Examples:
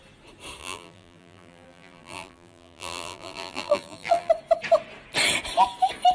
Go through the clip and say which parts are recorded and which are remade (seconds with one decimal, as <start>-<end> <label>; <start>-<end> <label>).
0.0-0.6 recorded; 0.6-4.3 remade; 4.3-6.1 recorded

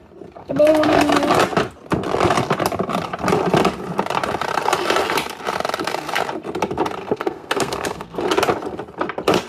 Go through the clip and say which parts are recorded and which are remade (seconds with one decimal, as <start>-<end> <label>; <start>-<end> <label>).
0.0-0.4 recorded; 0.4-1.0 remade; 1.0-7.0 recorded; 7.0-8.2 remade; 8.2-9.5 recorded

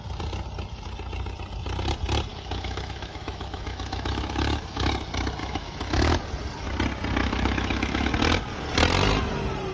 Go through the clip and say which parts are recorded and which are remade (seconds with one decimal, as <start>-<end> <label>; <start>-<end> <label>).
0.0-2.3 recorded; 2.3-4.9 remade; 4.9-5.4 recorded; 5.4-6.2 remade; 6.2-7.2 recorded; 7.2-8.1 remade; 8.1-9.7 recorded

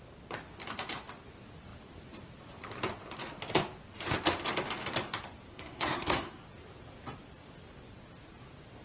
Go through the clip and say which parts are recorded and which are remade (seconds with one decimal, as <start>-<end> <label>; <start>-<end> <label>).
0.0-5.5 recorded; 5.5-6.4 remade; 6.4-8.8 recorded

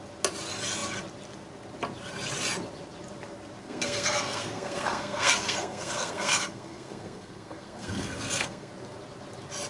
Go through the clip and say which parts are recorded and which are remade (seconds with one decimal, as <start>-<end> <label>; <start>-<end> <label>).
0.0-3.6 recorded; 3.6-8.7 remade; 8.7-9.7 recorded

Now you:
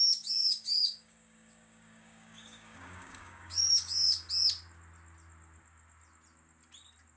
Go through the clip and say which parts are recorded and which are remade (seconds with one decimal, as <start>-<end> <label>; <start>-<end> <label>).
0.0-4.3 remade; 4.3-7.2 recorded

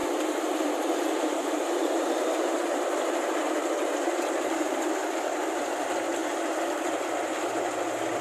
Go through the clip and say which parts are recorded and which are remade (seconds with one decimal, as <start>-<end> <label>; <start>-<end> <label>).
0.0-4.9 remade; 4.9-8.2 recorded